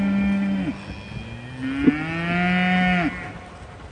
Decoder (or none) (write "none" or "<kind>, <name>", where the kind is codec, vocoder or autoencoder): none